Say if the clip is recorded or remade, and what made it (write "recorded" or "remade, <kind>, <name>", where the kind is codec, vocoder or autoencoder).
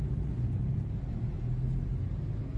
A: recorded